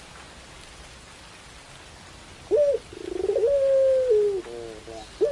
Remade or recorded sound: recorded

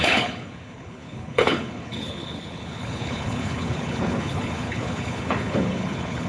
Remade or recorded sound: remade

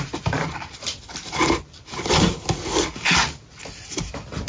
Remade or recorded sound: recorded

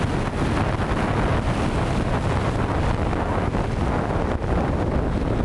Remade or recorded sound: recorded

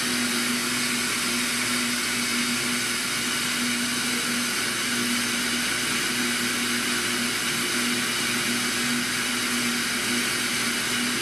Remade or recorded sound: recorded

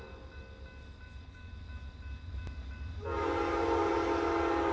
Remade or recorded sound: recorded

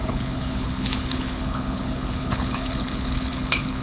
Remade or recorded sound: remade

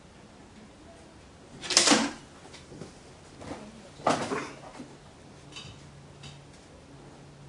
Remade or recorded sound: recorded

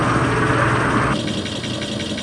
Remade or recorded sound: recorded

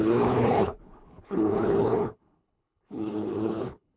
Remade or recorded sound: remade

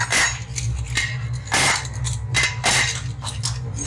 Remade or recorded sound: recorded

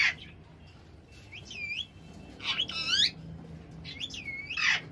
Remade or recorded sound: recorded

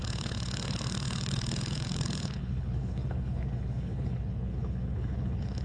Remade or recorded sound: remade